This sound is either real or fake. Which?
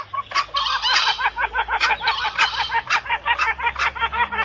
real